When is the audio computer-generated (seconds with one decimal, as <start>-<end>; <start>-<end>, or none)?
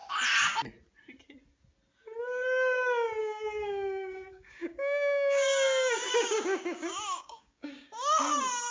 3.2-7.9